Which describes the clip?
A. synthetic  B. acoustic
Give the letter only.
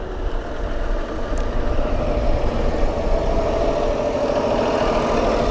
B